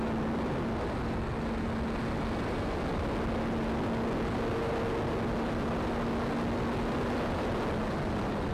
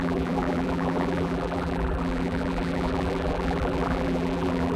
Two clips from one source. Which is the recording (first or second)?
first